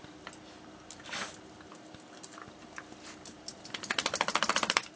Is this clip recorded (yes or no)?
yes